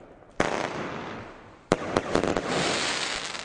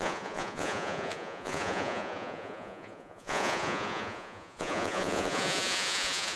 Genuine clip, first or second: first